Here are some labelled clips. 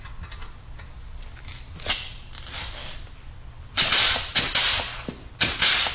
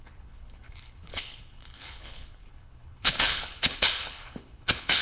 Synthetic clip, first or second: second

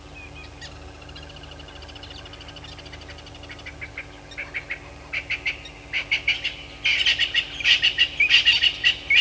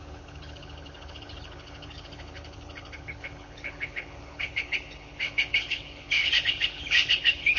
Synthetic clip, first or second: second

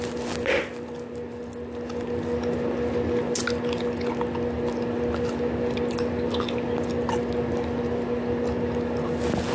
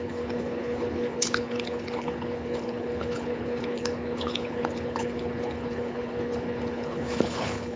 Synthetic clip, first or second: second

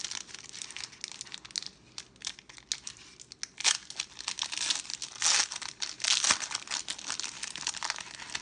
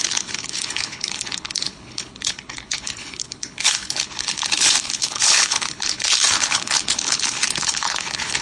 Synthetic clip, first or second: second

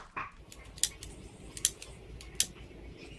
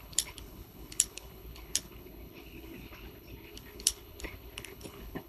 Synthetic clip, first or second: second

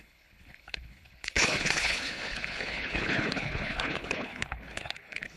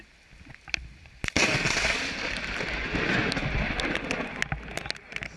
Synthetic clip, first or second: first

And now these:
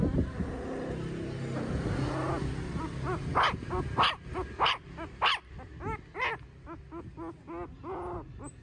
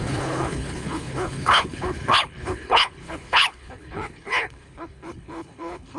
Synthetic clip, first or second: second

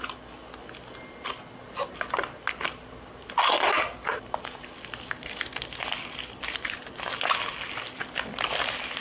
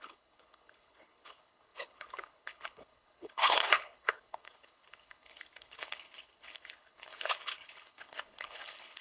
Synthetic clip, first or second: second